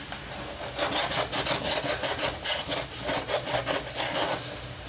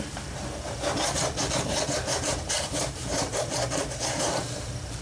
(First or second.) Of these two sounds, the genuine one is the first